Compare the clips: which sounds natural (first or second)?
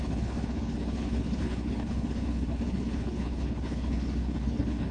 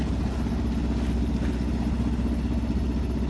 second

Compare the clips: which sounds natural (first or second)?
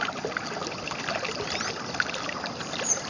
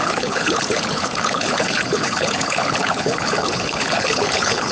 first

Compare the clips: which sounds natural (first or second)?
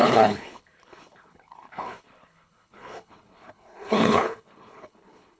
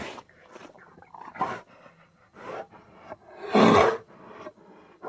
second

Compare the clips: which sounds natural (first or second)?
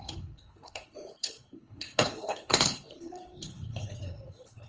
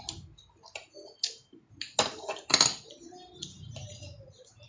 second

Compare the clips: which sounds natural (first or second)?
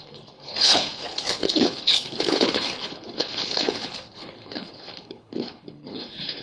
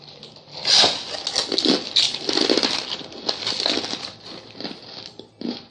second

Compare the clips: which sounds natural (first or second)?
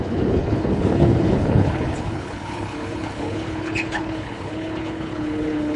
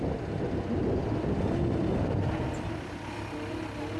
second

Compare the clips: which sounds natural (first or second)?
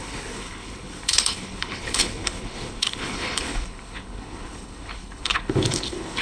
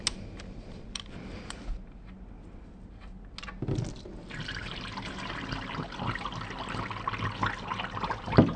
second